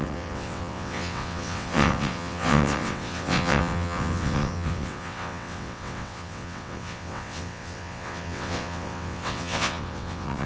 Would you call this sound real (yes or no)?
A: no